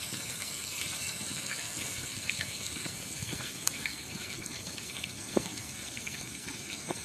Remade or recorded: remade